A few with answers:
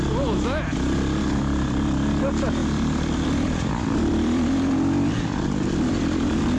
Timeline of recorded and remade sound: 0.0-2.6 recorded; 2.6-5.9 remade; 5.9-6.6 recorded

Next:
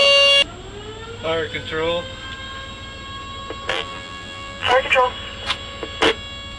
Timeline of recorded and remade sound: 0.0-3.7 recorded; 3.7-4.7 remade; 4.7-6.6 recorded